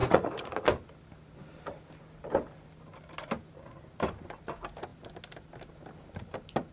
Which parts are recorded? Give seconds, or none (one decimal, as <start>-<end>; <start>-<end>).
0.6-6.7